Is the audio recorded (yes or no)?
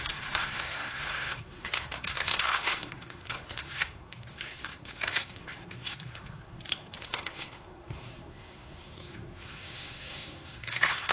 no